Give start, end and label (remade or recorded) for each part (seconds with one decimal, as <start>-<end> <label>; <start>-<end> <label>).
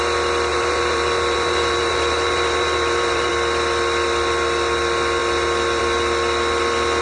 0.0-0.5 recorded; 0.5-3.3 remade; 3.3-7.0 recorded